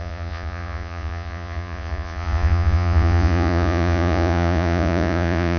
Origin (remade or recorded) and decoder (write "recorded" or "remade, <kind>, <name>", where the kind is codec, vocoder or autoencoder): remade, vocoder, Vocos